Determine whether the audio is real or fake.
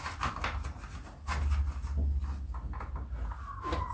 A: real